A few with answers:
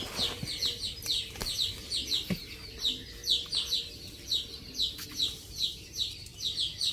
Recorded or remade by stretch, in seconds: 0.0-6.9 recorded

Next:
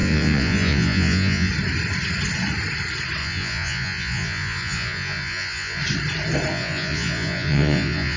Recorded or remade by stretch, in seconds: 0.0-1.5 remade; 1.5-3.2 recorded; 3.2-5.8 remade; 5.8-6.5 recorded; 6.5-8.2 remade

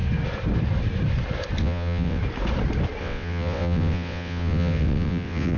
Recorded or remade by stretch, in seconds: 0.0-1.6 recorded; 1.6-2.2 remade; 2.2-3.0 recorded; 3.0-5.6 remade

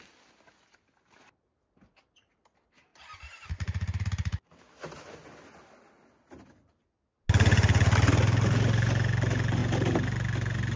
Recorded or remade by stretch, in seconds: 0.0-2.9 recorded; 2.9-4.6 remade; 4.6-10.8 recorded

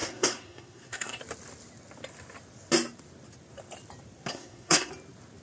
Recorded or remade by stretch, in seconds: 0.0-1.2 remade; 1.2-4.3 recorded; 4.3-4.9 remade; 4.9-5.4 recorded

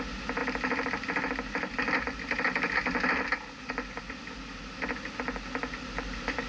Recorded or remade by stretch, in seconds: 0.0-6.5 recorded

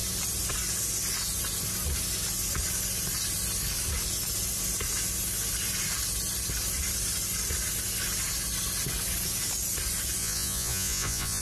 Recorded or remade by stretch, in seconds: 0.0-10.2 recorded; 10.2-11.4 remade